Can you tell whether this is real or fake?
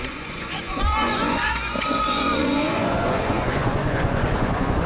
fake